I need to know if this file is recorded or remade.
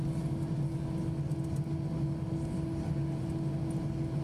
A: recorded